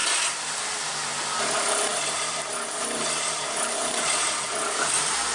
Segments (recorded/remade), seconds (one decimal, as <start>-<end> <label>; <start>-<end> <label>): 0.0-5.3 recorded